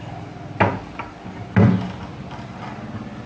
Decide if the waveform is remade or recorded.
recorded